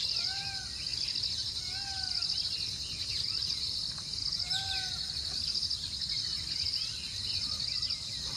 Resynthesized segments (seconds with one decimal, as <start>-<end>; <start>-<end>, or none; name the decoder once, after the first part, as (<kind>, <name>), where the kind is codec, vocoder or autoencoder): none

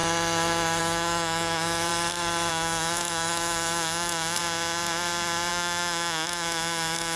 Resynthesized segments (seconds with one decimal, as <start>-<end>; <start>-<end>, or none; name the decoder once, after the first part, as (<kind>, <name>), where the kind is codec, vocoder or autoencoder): 0.8-1.9 (autoencoder, DAC-VAE); 2.5-4.4; 5.5-7.2

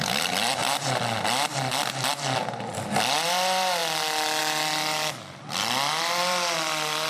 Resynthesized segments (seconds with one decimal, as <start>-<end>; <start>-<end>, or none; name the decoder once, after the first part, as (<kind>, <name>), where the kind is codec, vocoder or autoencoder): 0.0-3.8 (vocoder, BigVGAN v2); 4.4-7.1

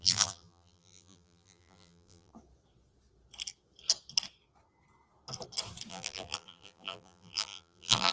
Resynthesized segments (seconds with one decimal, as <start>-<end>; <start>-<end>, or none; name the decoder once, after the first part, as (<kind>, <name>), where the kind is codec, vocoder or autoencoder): 0.0-2.3 (vocoder, BigVGAN v2); 5.9-8.1